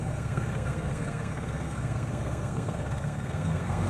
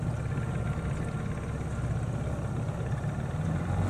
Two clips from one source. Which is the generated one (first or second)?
first